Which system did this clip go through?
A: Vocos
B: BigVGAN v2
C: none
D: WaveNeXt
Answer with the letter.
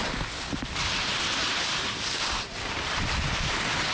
B